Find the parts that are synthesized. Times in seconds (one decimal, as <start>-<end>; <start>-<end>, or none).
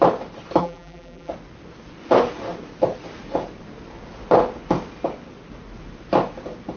0.6-1.3